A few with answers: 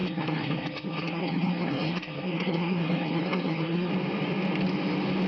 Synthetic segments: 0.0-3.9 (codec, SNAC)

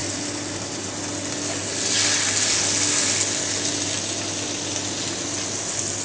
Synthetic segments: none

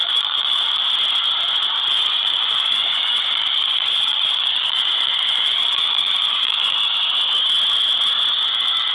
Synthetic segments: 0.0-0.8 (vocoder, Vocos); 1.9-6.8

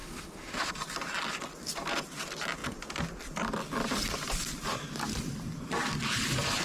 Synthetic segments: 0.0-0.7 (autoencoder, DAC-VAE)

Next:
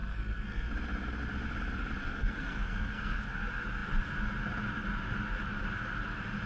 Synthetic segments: 0.0-0.7 (codec, SNAC); 2.0-3.2

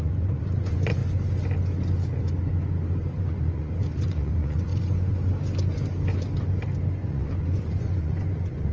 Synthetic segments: 0.0-1.0 (vocoder, Vocos); 3.2-4.7; 7.0-8.7

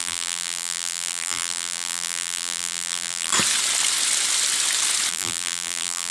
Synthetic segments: 0.0-3.3 (vocoder, BigVGAN v2); 5.1-6.1

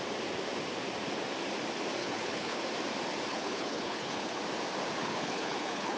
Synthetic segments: 2.0-2.6 (codec, HILCodec); 3.3-4.4; 5.0-6.0